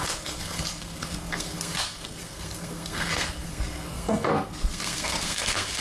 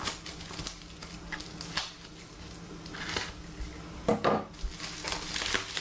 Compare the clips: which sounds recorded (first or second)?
second